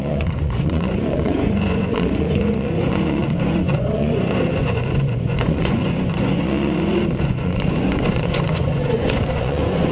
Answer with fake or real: fake